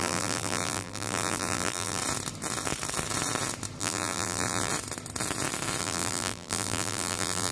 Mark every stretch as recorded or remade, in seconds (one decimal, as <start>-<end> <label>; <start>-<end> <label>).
0.0-2.0 remade; 2.0-3.8 recorded; 3.8-4.7 remade; 4.7-5.8 recorded; 5.8-7.5 remade